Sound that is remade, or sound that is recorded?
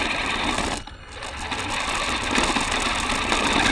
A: recorded